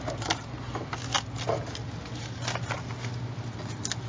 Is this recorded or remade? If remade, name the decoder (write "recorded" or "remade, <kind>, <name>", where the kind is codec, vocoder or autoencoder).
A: recorded